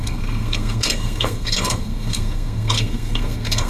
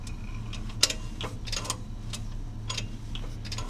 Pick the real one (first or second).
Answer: second